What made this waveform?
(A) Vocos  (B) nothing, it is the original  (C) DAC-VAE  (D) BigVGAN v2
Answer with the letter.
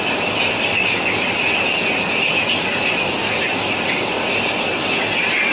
B